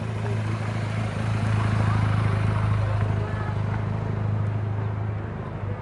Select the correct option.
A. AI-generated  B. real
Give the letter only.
B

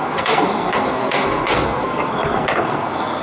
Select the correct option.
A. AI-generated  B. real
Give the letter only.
A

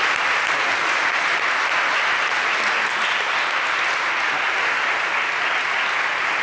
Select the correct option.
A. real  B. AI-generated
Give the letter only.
A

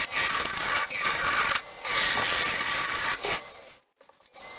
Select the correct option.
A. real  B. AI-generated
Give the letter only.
A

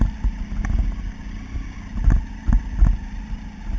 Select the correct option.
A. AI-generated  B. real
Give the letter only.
B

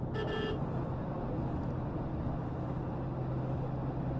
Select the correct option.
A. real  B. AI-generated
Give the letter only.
A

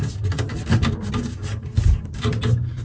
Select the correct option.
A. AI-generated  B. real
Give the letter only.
B